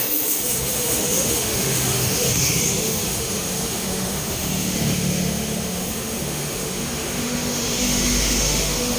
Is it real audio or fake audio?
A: fake